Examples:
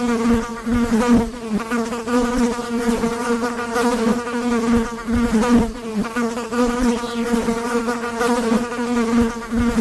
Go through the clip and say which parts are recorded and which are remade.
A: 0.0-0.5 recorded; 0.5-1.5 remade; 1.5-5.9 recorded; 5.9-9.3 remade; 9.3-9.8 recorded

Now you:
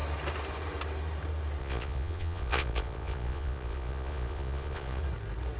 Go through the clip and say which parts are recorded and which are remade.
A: 0.0-1.6 recorded; 1.6-5.0 remade; 5.0-5.6 recorded

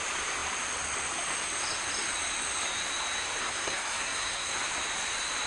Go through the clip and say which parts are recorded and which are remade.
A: 0.0-3.4 recorded; 3.4-4.5 remade; 4.5-5.5 recorded